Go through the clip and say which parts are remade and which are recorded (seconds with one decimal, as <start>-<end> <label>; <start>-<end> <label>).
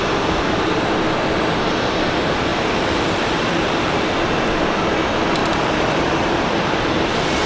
0.0-2.5 recorded; 2.5-4.2 remade; 4.2-5.4 recorded; 5.4-7.1 remade; 7.1-7.5 recorded